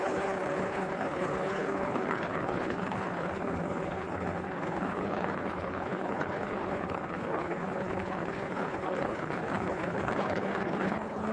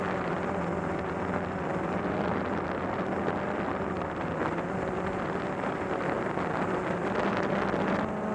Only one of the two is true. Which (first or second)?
second